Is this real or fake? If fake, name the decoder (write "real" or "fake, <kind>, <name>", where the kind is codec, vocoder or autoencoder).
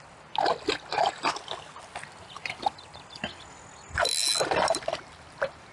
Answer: real